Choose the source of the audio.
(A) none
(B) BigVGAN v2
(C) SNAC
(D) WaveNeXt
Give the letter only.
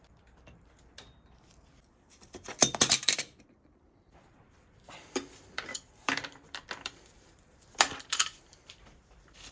B